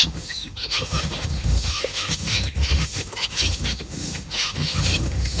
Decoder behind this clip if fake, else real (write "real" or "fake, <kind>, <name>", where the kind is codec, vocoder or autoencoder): fake, autoencoder, DAC-VAE